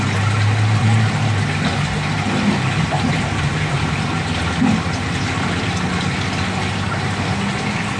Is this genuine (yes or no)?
no